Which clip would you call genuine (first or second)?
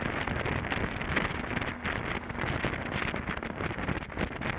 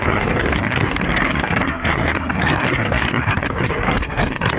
first